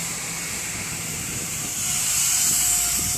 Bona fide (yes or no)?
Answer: no